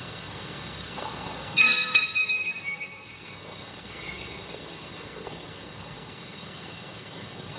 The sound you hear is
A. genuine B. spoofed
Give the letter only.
B